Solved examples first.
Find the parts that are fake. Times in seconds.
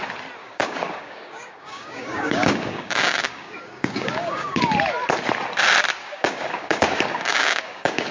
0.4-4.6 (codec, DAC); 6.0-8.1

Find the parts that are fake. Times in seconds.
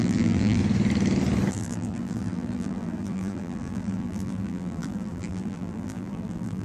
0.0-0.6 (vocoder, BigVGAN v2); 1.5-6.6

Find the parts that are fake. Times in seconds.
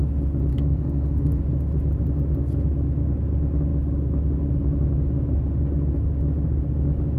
0.5-1.4 (codec, SNAC)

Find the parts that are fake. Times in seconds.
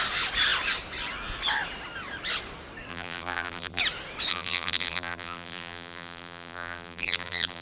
2.9-3.8 (vocoder, BigVGAN v2); 4.3-7.6